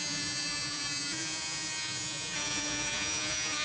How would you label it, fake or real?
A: fake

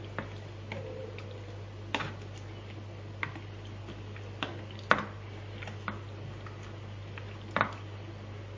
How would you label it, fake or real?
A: real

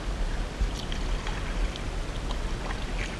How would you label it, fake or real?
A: real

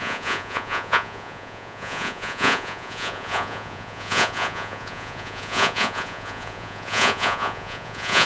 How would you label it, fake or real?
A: fake